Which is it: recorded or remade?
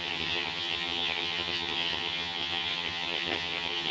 remade